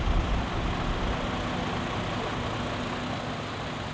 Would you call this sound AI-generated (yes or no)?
no